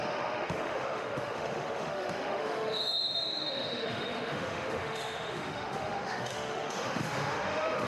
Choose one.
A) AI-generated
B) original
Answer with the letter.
A